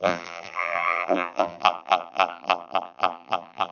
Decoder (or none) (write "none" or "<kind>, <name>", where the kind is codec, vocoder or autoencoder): vocoder, BigVGAN v2